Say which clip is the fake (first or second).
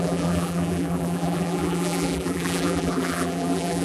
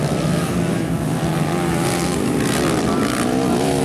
first